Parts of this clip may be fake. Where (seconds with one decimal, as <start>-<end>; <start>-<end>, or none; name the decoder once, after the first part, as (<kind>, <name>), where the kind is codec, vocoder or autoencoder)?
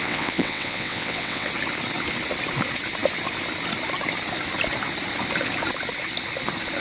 0.0-1.5 (vocoder, WaveNeXt)